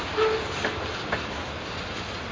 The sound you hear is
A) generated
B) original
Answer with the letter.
B